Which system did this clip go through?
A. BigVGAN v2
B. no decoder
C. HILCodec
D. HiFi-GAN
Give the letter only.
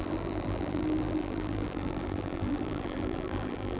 A